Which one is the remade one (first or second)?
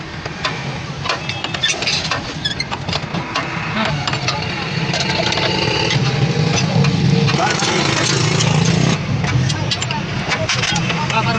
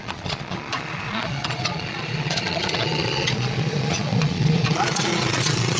second